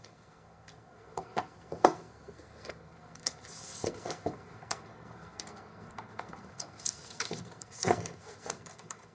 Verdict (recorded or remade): remade